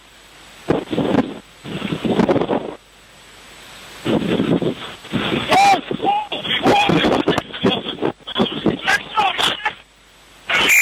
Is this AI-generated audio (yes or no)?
no